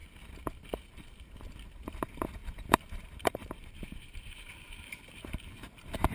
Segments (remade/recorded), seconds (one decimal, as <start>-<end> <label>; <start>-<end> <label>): 0.0-2.4 recorded; 2.4-6.1 remade